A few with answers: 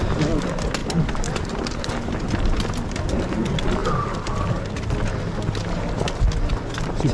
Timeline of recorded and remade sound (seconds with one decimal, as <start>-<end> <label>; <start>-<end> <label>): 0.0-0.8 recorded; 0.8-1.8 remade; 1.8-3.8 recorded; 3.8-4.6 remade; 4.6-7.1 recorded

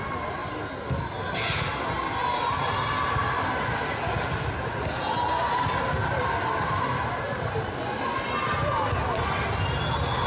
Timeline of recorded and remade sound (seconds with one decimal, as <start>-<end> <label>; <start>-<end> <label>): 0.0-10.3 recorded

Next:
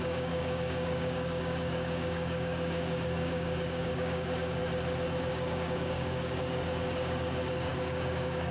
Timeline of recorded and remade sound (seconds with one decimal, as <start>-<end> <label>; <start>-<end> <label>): 0.0-4.6 remade; 4.6-5.3 recorded; 5.3-8.5 remade